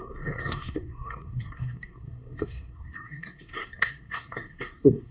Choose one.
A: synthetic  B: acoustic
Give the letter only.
A